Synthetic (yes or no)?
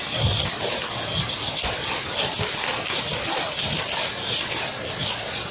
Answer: no